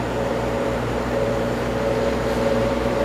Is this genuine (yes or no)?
no